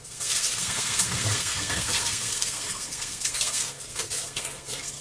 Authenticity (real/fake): fake